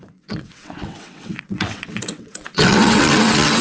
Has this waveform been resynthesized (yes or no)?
yes